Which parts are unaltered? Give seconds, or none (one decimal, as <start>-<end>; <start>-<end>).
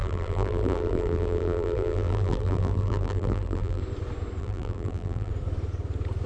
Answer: 3.8-4.4; 5.3-6.3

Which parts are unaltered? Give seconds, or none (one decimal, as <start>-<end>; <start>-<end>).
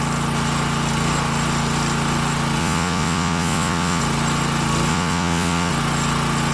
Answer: 0.0-2.6; 4.0-4.9; 5.7-6.5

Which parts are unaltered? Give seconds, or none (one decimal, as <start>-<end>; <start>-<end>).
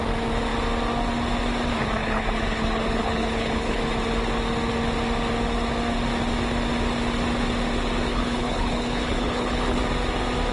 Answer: 0.0-2.0; 3.8-8.1; 9.8-10.5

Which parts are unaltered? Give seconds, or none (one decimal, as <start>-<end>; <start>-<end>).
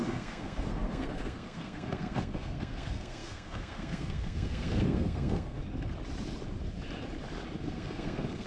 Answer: 5.6-7.6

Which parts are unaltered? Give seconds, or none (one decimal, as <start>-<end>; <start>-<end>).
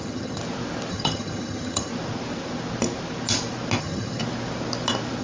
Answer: 0.4-0.9; 1.9-3.8; 4.2-5.2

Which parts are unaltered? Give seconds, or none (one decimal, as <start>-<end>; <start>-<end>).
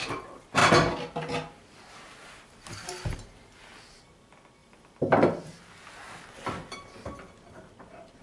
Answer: 0.0-8.2